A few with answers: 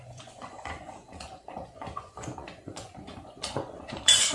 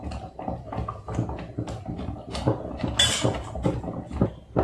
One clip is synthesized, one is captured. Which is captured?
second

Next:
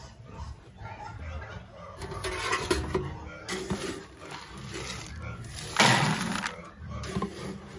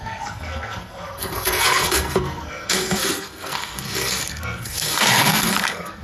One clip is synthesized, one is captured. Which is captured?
first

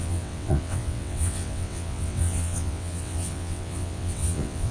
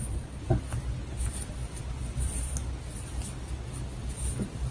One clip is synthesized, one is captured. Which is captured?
second